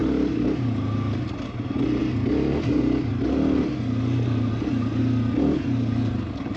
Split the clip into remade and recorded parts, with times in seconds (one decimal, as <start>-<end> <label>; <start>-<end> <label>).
0.0-6.6 recorded